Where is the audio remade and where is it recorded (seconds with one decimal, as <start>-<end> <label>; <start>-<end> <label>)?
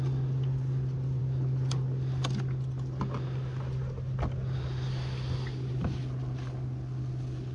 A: 0.0-7.5 recorded